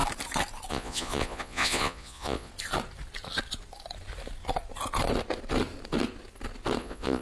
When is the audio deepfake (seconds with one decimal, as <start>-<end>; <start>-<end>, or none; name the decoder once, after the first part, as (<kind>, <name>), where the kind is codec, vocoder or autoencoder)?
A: 0.7-2.5 (vocoder, Vocos); 6.8-7.2